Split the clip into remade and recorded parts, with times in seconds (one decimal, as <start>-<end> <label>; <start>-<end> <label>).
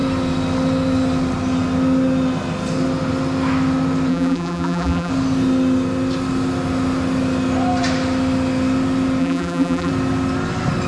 0.0-4.1 recorded; 4.1-5.1 remade; 5.1-9.2 recorded; 9.2-9.9 remade; 9.9-10.9 recorded